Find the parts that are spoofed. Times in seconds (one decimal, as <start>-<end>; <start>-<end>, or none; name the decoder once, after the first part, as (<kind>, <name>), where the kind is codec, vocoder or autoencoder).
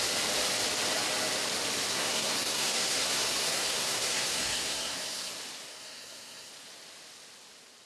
1.9-5.3 (codec, SNAC); 5.7-6.5